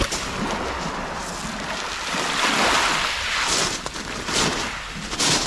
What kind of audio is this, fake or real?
real